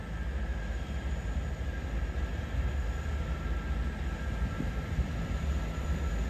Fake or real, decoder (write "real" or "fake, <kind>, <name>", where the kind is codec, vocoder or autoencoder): real